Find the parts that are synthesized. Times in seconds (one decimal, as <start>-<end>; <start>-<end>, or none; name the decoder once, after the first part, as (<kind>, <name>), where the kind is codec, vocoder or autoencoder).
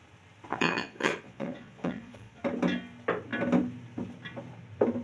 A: 0.5-2.4 (vocoder, Vocos)